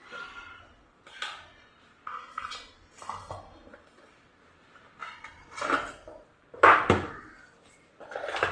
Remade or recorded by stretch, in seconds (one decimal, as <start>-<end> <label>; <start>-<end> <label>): 0.0-8.5 recorded